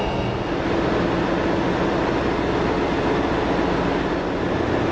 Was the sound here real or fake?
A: real